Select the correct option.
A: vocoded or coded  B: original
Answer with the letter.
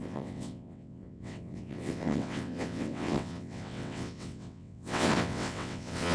A